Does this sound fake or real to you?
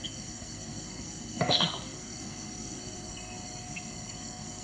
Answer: fake